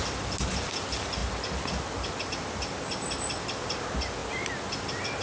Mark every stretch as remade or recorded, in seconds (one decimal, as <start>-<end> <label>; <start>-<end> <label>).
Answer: 0.0-5.2 recorded

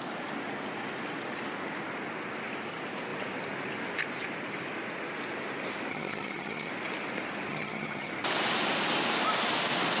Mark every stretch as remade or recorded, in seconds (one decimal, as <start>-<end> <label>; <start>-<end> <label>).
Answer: 0.0-5.9 recorded; 5.9-6.7 remade; 6.7-7.5 recorded; 7.5-8.1 remade; 8.1-10.0 recorded

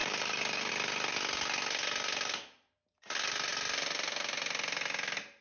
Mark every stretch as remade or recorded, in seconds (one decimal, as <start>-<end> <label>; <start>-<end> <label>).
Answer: 0.0-0.7 remade; 0.7-5.4 recorded

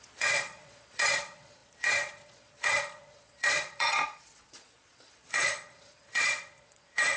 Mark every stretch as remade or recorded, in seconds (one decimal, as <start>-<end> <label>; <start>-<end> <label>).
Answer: 0.0-7.2 remade